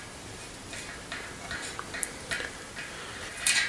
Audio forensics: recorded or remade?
recorded